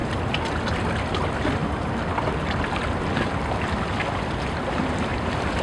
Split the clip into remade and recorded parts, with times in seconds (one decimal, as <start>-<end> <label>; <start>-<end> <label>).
0.0-5.6 recorded